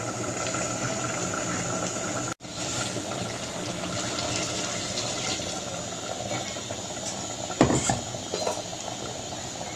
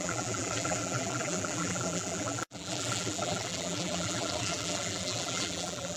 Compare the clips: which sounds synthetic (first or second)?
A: second